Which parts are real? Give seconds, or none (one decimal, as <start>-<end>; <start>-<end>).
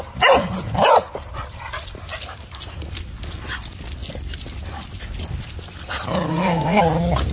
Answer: 0.0-6.3; 6.8-7.3